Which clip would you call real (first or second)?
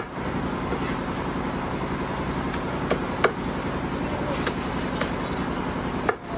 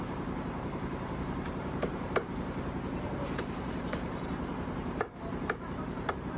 first